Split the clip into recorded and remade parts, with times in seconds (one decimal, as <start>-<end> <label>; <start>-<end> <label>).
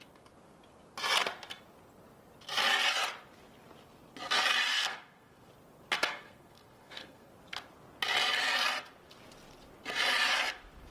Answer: 0.0-4.7 recorded; 4.7-5.5 remade; 5.5-6.1 recorded; 6.1-7.3 remade; 7.3-10.9 recorded